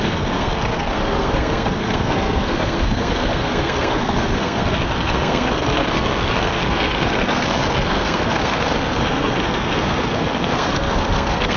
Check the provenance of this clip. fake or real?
fake